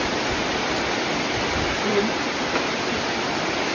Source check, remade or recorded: recorded